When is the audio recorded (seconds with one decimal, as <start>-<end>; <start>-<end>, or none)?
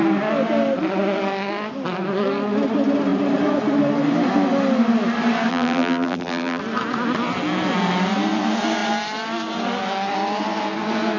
0.0-5.5; 6.6-11.2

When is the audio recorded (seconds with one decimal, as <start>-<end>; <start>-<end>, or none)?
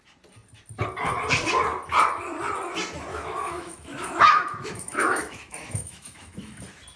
0.0-3.1; 6.6-7.0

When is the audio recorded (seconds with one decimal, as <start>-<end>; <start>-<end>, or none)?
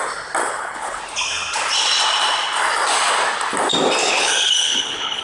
0.0-0.4; 1.0-4.0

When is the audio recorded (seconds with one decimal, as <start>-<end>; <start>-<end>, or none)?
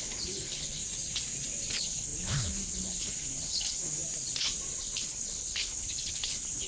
0.8-1.7; 4.0-4.8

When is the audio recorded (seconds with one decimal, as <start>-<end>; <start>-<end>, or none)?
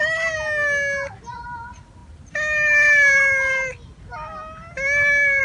0.0-5.4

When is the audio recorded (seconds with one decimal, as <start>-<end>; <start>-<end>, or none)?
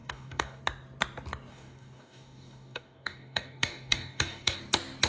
0.6-1.5; 4.6-5.1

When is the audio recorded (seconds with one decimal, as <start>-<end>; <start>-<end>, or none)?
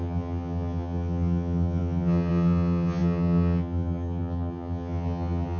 none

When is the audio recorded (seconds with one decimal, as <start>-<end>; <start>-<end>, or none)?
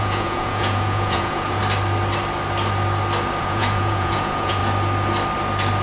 1.6-3.4; 4.6-5.8